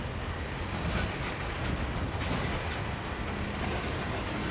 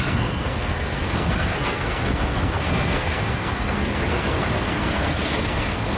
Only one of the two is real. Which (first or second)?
first